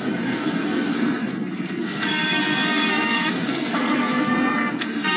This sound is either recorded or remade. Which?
remade